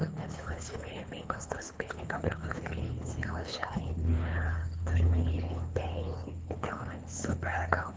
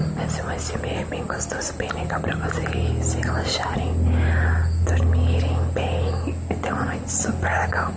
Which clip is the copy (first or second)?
first